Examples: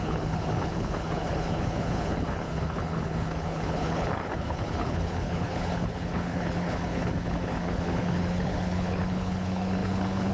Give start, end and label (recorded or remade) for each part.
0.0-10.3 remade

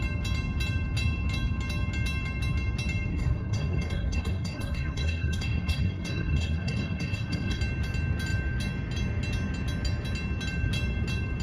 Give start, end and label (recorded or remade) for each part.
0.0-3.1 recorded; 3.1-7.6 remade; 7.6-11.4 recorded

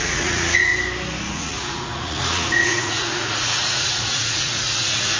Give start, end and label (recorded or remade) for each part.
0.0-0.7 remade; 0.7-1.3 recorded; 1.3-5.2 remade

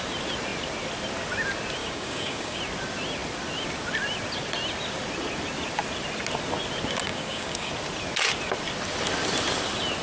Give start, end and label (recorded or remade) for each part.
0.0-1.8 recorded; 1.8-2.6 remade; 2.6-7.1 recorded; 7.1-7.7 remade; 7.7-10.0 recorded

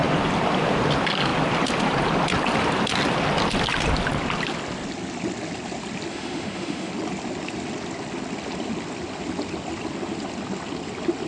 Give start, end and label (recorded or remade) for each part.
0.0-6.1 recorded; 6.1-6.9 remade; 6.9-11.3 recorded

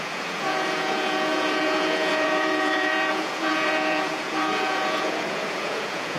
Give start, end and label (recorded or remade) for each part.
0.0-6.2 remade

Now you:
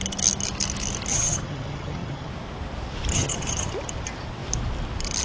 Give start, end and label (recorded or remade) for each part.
0.0-1.1 recorded; 1.1-2.3 remade; 2.3-3.1 recorded; 3.1-3.7 remade; 3.7-5.2 recorded